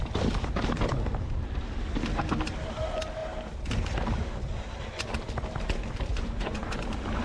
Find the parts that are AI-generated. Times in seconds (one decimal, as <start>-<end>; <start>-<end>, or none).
6.1-6.8